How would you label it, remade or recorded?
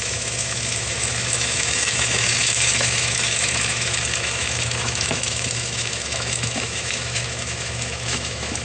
remade